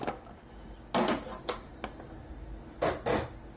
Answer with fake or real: real